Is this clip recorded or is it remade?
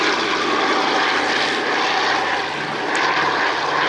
recorded